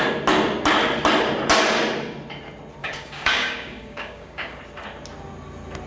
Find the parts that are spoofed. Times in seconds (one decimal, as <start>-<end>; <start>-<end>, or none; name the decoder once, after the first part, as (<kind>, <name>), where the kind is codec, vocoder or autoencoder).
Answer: 2.8-4.6 (codec, DAC)